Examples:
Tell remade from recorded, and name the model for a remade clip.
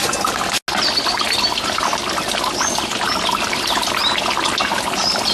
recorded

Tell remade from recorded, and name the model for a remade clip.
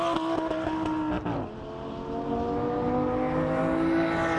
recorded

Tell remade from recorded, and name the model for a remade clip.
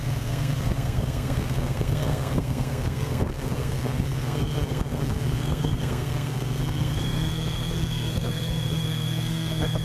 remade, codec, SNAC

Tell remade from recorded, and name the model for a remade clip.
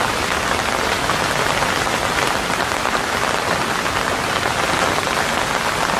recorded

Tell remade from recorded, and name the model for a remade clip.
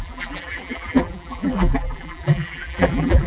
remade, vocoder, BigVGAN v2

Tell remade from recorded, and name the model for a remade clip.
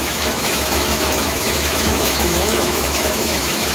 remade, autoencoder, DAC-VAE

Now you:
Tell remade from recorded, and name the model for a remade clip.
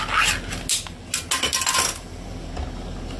recorded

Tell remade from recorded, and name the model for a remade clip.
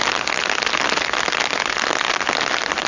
recorded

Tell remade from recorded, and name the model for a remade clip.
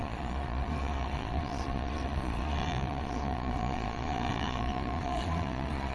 remade, vocoder, Vocos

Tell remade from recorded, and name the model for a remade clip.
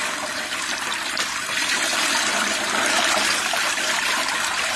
remade, vocoder, BigVGAN v2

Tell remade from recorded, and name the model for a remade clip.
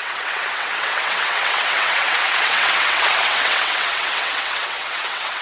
remade, vocoder, WaveNeXt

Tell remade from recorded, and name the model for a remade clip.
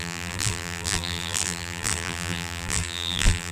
remade, vocoder, BigVGAN v2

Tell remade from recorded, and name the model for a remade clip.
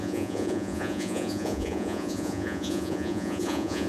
remade, vocoder, Vocos